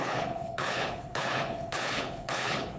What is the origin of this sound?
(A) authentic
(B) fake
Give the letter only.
B